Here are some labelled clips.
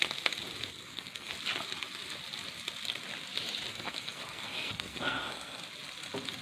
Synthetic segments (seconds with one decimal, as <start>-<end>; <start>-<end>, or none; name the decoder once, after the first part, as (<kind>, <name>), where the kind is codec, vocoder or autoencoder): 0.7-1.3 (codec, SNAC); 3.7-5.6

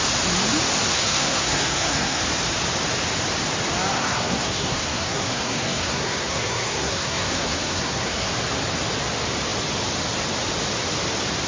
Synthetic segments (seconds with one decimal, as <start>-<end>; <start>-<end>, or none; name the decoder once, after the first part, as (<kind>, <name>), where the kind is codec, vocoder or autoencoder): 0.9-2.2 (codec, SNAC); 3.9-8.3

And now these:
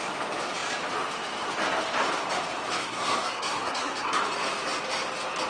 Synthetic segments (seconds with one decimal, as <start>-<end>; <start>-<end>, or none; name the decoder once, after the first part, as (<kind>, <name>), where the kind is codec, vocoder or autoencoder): 2.8-4.2 (codec, SNAC)